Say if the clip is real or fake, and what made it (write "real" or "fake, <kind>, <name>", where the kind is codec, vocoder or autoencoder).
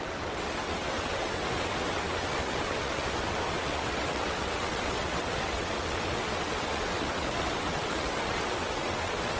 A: fake, vocoder, WaveNeXt